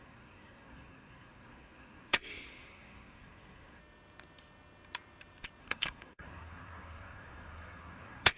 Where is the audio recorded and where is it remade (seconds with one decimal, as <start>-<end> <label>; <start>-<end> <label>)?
0.0-3.8 remade; 3.8-5.6 recorded; 5.6-8.4 remade